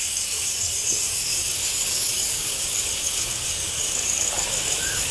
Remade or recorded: remade